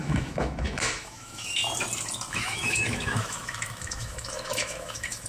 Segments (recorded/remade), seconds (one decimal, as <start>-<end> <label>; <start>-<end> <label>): 0.0-1.6 remade; 1.6-2.3 recorded; 2.3-5.3 remade